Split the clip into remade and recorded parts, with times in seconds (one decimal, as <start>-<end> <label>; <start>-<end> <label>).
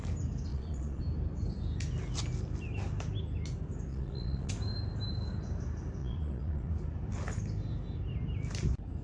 0.0-0.5 recorded; 0.5-1.0 remade; 1.0-3.9 recorded; 3.9-4.5 remade; 4.5-6.0 recorded; 6.0-6.7 remade; 6.7-9.0 recorded